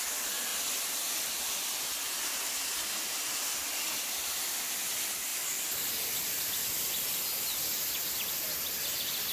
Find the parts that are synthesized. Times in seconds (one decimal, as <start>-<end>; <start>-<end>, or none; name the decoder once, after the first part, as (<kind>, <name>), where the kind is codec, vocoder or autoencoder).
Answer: none